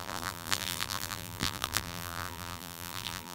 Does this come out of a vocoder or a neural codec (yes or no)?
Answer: yes